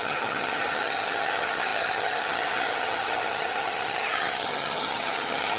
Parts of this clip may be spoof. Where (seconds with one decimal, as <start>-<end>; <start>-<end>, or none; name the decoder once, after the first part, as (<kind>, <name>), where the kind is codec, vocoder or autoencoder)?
0.0-5.6 (vocoder, HiFi-GAN)